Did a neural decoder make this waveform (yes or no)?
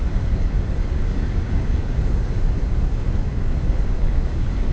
yes